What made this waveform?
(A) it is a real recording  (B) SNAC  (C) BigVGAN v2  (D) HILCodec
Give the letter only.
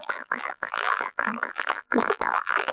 C